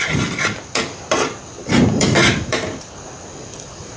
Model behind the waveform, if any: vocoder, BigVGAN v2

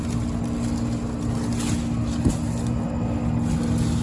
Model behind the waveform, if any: none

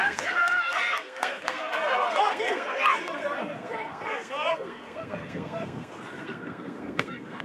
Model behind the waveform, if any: codec, SNAC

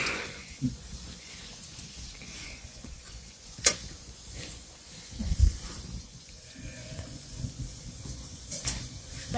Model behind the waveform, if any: vocoder, Vocos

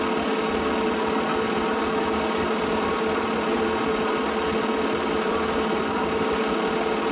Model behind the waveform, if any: none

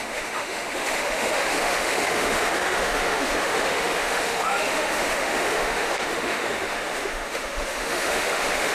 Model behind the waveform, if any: autoencoder, DAC-VAE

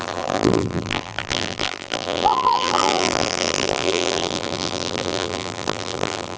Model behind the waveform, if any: vocoder, BigVGAN v2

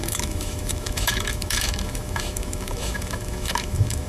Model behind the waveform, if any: autoencoder, DAC-VAE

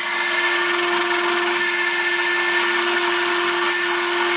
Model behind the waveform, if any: none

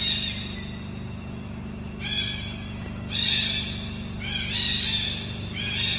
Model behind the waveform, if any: none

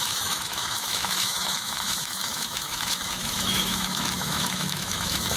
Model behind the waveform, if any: autoencoder, DAC-VAE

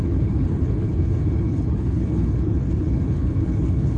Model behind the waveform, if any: codec, HILCodec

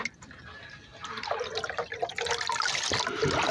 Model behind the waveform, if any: none